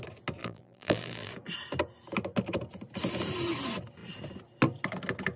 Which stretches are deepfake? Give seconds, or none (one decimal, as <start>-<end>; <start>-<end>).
0.4-1.3

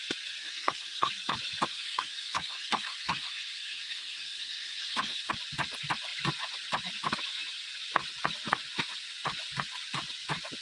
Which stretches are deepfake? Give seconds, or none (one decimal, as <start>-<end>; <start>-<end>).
0.4-1.1; 1.7-5.3

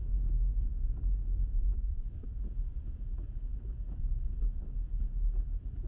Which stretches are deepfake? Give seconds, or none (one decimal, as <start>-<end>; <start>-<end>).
0.0-0.5; 1.4-4.9

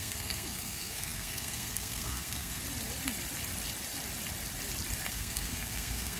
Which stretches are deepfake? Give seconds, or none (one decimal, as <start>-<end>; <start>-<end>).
0.0-2.6; 5.1-6.2